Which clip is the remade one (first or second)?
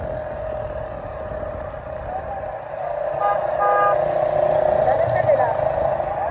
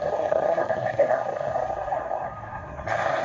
second